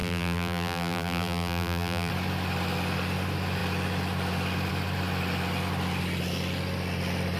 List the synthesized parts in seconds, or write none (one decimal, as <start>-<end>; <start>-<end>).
0.0-2.1